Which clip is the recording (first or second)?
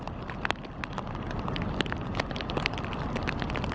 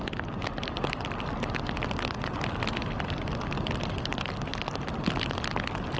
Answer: second